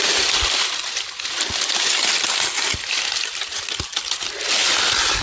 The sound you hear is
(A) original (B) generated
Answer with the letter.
A